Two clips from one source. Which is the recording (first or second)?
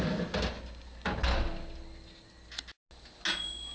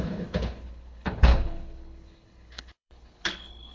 first